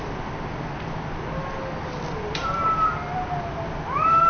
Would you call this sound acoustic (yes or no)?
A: yes